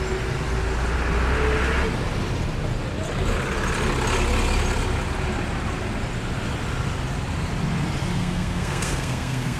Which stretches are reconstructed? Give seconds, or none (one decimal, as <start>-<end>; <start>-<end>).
8.2-9.6